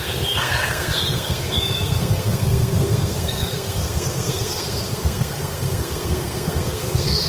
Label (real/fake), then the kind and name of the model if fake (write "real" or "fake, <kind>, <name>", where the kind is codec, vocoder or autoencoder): fake, codec, SNAC